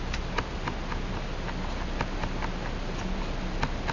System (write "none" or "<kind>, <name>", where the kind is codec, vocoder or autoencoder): none